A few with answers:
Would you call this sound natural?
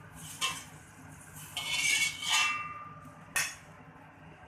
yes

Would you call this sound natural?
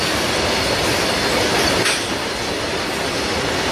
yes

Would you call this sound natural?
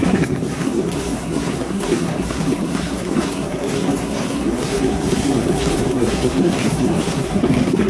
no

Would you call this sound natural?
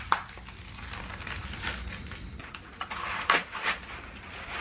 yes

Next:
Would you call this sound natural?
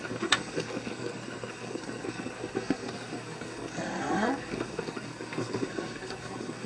no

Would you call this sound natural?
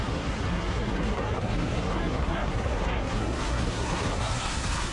no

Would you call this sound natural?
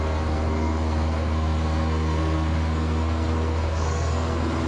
no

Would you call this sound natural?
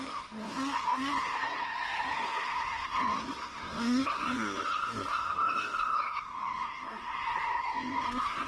no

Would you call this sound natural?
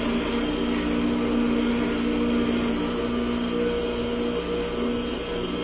yes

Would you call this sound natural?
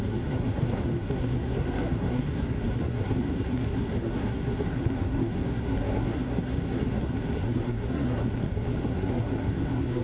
no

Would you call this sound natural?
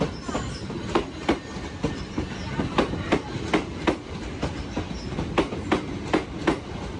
yes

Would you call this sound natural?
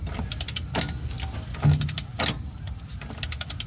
yes